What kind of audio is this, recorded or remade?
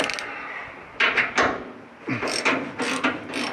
recorded